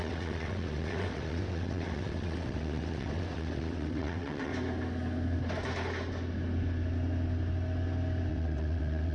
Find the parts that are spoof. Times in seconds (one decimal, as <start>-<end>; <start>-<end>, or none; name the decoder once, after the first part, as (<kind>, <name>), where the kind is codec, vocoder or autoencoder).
0.0-4.5 (vocoder, WaveNeXt); 8.3-9.1